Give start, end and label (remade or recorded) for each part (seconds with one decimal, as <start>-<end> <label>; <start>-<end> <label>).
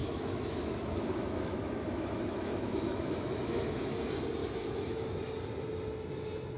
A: 0.0-4.0 remade; 4.0-4.4 recorded; 4.4-5.1 remade; 5.1-6.6 recorded